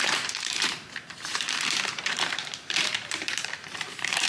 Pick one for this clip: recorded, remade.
remade